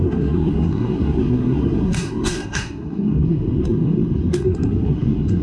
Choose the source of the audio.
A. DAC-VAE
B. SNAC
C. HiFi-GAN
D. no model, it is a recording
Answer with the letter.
B